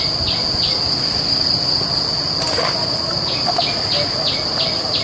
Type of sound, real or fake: real